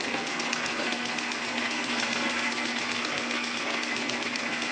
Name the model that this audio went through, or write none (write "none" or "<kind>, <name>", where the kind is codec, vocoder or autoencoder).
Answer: codec, SNAC